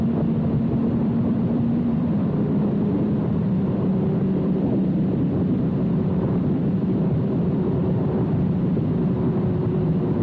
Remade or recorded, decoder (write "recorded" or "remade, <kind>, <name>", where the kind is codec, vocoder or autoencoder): remade, vocoder, BigVGAN v2